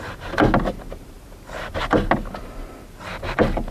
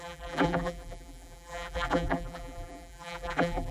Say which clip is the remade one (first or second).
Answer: second